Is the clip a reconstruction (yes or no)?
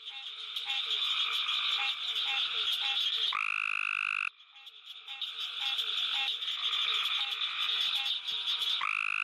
no